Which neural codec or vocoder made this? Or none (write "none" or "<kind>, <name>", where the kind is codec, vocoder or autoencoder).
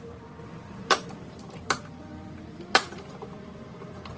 vocoder, BigVGAN v2